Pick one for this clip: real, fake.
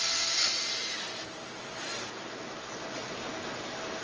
real